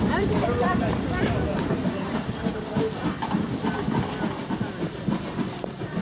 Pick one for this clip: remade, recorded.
recorded